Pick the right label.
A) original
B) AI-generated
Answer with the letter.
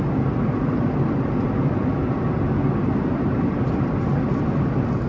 A